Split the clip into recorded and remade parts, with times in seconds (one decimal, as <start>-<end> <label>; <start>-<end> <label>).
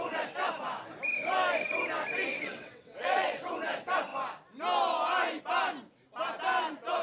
0.0-2.3 recorded; 2.3-3.5 remade; 3.5-7.0 recorded